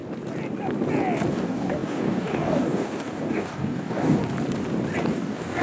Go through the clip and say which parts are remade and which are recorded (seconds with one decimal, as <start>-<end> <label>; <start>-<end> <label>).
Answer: 0.0-1.3 recorded; 1.3-4.2 remade; 4.2-5.1 recorded; 5.1-5.6 remade